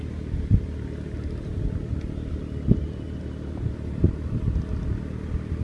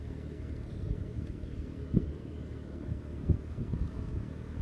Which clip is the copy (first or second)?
second